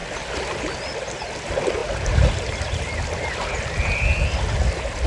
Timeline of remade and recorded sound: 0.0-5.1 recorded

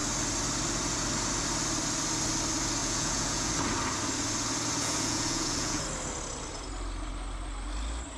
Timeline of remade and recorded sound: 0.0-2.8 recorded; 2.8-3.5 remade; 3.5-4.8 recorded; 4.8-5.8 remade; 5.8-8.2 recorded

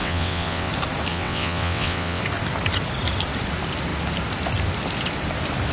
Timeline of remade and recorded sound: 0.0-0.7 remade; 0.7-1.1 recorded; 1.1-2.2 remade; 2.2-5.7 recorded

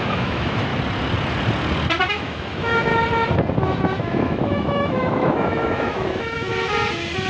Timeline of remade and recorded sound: 0.0-0.7 remade; 0.7-2.1 recorded; 2.1-2.9 remade; 2.9-4.0 recorded; 4.0-6.5 remade; 6.5-7.3 recorded

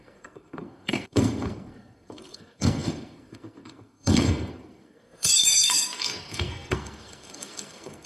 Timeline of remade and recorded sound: 0.0-8.1 remade

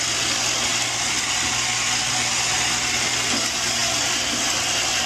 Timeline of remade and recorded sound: 0.0-5.1 recorded

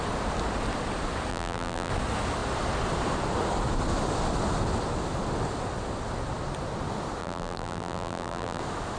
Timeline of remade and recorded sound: 0.0-1.3 recorded; 1.3-1.9 remade; 1.9-7.2 recorded; 7.2-8.6 remade; 8.6-9.0 recorded